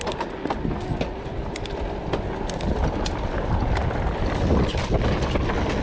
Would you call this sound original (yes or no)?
yes